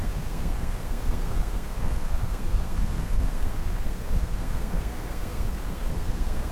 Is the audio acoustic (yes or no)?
no